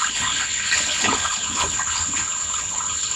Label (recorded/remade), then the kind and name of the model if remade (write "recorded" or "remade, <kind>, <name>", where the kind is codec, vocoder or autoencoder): remade, codec, HILCodec